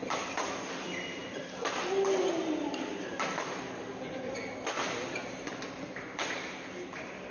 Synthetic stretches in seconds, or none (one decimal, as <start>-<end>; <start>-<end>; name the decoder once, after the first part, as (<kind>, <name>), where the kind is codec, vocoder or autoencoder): none